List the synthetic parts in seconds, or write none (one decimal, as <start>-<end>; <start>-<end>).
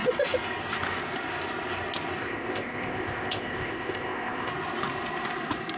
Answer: 2.2-4.5